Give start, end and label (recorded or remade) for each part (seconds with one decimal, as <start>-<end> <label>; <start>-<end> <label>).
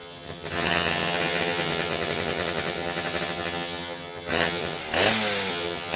0.0-4.8 remade; 4.8-5.5 recorded; 5.5-6.0 remade